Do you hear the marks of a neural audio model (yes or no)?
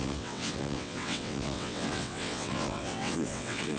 yes